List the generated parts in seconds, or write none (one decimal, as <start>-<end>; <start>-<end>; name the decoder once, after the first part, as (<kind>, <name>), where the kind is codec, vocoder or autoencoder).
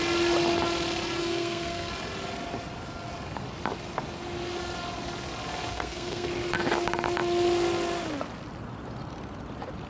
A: 1.2-1.9 (codec, SNAC); 5.7-6.3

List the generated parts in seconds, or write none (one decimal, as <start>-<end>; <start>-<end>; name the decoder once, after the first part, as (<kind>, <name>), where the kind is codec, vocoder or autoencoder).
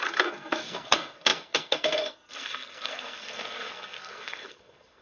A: 0.0-5.0 (codec, SNAC)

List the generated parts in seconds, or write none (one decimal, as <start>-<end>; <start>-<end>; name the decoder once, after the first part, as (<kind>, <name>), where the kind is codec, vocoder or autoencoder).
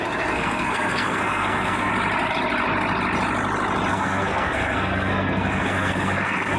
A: 0.0-1.9 (codec, SNAC); 3.9-6.6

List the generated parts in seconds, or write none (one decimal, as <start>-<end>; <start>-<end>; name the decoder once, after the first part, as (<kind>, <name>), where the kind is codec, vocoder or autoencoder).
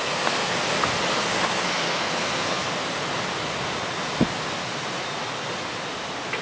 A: 0.0-0.5 (codec, SNAC); 1.2-2.7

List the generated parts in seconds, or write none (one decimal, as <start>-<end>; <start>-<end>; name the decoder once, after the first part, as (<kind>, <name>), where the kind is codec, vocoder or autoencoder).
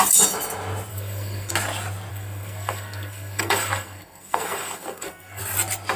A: 0.9-1.5 (codec, SNAC); 2.1-5.4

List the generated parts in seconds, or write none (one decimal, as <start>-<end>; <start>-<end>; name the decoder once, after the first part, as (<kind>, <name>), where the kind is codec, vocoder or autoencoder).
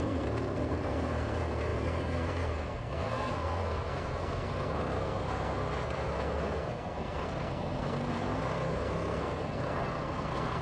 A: 0.0-10.6 (codec, SNAC)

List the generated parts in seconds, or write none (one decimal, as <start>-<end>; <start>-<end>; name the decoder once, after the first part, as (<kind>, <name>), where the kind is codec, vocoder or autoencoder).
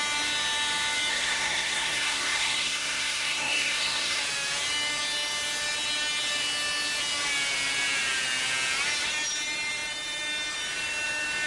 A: 1.1-4.2 (codec, SNAC)